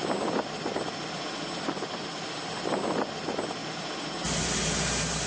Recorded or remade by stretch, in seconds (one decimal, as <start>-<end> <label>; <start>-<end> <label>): 0.0-5.3 recorded